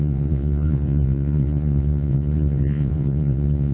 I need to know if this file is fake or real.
fake